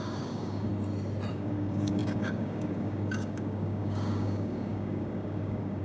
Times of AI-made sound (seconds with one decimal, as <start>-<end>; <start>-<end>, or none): 0.0-0.7; 1.3-5.8